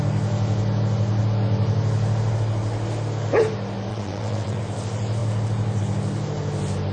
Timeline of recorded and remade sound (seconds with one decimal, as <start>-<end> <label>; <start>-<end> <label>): 0.0-3.9 recorded; 3.9-4.6 remade; 4.6-6.9 recorded